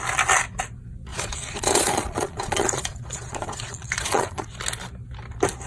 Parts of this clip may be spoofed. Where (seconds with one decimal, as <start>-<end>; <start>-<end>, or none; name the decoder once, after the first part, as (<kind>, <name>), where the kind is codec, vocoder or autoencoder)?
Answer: 1.1-4.5 (vocoder, Vocos)